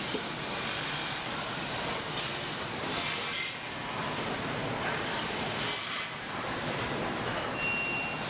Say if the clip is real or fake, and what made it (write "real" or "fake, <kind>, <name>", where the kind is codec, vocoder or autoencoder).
real